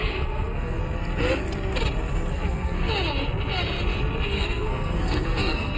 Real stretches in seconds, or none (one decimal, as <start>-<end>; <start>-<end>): 0.8-2.3; 2.9-4.3